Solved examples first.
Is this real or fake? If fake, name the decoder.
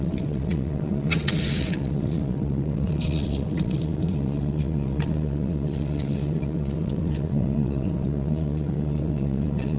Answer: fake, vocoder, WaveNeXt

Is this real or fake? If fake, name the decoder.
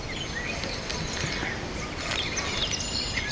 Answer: real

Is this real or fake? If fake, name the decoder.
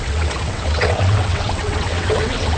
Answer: fake, vocoder, WaveNeXt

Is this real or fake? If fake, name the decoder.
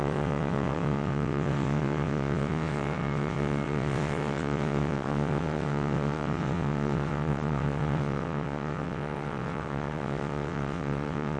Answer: fake, vocoder, WaveNeXt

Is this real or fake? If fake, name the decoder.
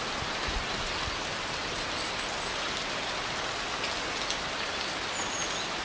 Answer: real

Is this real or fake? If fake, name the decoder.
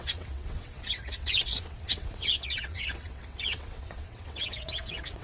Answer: fake, vocoder, WaveNeXt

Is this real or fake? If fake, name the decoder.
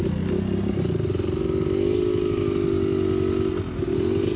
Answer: real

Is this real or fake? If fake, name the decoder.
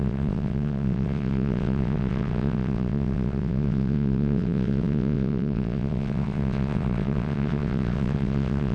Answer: fake, vocoder, WaveNeXt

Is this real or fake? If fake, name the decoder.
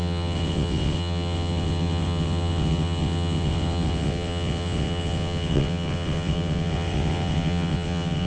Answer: fake, vocoder, WaveNeXt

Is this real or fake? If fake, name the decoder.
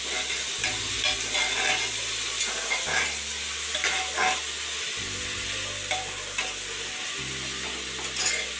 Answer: real